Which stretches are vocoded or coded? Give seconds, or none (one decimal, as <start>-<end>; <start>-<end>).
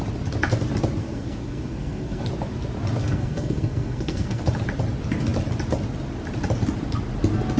1.0-2.3; 3.0-4.5